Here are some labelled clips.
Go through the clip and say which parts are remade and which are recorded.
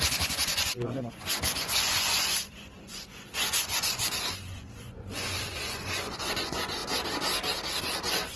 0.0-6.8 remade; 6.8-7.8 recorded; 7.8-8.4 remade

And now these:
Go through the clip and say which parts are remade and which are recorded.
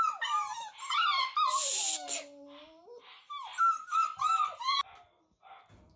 0.0-6.0 recorded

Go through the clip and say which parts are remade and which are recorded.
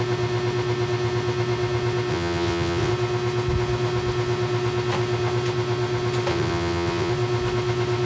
0.0-2.1 recorded; 2.1-2.9 remade; 2.9-6.3 recorded; 6.3-7.1 remade; 7.1-8.1 recorded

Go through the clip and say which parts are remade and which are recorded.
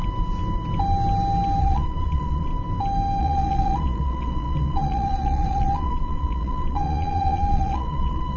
0.0-1.6 recorded; 1.6-2.5 remade; 2.5-3.2 recorded; 3.2-8.4 remade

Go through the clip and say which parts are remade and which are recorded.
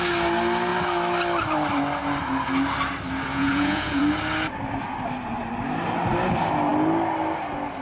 0.0-3.3 recorded; 3.3-4.0 remade; 4.0-7.8 recorded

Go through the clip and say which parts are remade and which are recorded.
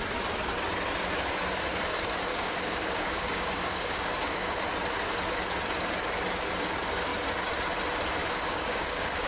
0.0-2.3 recorded; 2.3-4.6 remade; 4.6-8.2 recorded; 8.2-9.3 remade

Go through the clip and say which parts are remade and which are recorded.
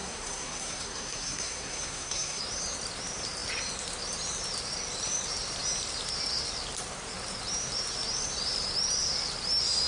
0.0-2.4 remade; 2.4-9.9 recorded